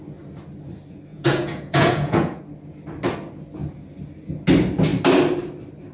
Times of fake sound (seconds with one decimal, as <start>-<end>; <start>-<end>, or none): 1.1-2.4

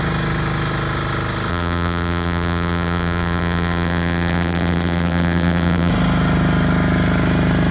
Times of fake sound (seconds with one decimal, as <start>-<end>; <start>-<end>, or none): 1.5-5.9

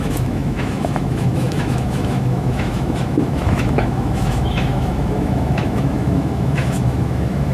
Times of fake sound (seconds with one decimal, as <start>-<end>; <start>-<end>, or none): 0.0-7.5

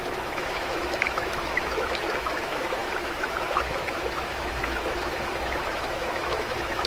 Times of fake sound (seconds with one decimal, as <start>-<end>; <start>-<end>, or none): 0.0-6.9